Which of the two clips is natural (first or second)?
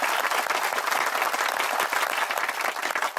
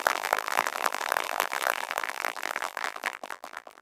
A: first